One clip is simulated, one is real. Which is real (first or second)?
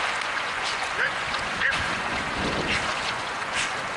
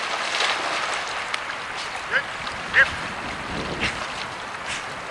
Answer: second